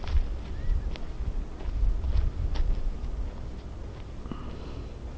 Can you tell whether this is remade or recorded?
recorded